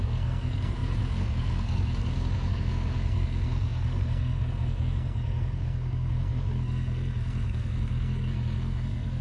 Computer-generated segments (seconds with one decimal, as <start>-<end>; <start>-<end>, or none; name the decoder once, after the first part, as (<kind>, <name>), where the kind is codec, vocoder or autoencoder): 0.0-9.2 (codec, SNAC)